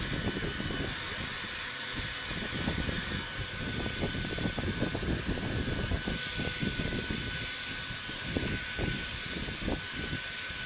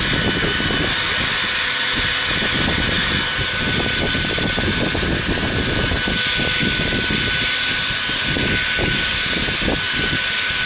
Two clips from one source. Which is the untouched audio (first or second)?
second